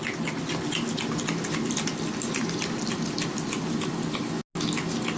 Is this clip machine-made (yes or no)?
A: no